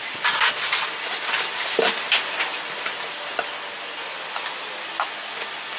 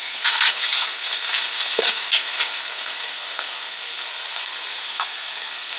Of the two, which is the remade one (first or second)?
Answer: second